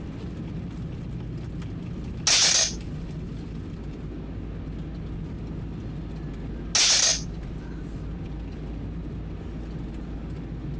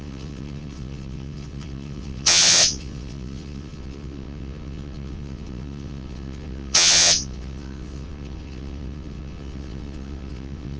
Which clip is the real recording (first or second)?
first